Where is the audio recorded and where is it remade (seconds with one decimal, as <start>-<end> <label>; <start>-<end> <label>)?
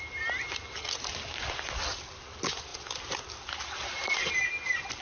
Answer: 0.0-5.0 recorded